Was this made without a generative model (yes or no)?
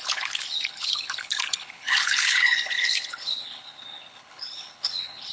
no